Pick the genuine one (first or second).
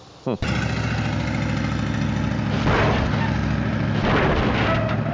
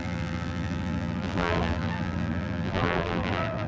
first